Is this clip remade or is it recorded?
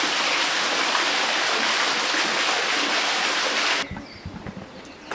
recorded